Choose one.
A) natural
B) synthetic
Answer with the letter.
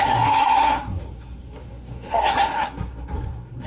B